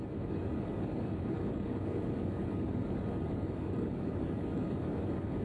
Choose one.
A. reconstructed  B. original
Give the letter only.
A